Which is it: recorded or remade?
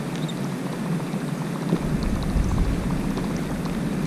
recorded